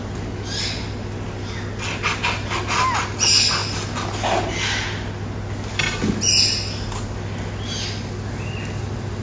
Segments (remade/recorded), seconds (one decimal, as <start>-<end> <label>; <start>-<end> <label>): 0.0-9.2 recorded